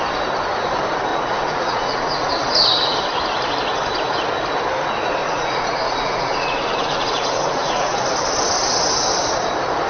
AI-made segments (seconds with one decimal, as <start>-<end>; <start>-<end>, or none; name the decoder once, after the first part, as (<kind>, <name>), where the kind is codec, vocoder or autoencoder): 1.1-2.3 (vocoder, Vocos); 5.2-8.0